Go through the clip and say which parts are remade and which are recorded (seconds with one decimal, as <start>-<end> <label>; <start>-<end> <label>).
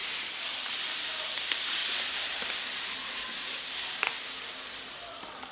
0.0-1.8 remade; 1.8-4.5 recorded; 4.5-5.5 remade